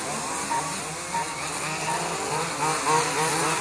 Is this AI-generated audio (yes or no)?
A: no